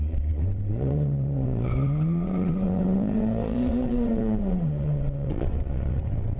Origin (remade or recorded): remade